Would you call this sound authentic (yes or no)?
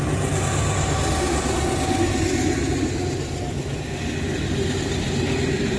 yes